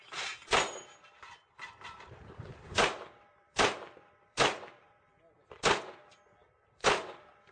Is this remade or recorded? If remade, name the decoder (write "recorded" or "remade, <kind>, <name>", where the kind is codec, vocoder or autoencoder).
remade, vocoder, BigVGAN v2